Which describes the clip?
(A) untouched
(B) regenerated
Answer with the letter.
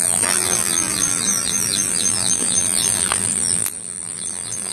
B